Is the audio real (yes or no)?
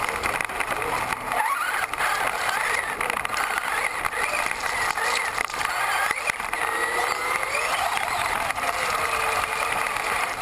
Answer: yes